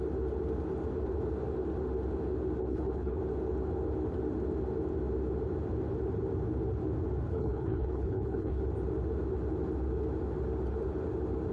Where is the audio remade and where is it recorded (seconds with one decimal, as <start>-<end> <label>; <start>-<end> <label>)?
0.0-2.6 recorded; 2.6-3.2 remade; 3.2-7.3 recorded; 7.3-8.6 remade; 8.6-11.5 recorded